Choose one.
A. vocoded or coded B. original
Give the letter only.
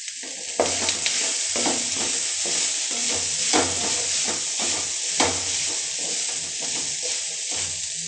B